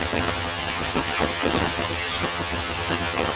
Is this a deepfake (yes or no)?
yes